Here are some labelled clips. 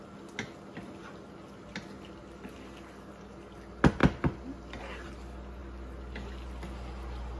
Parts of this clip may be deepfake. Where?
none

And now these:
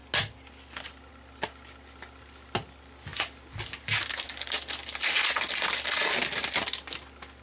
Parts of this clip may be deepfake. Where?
none

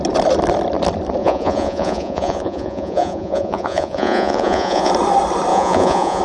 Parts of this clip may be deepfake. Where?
1.2-4.9 (vocoder, Vocos); 5.5-6.2

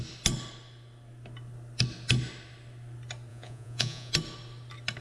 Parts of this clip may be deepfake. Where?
3.3-4.1 (vocoder, Vocos)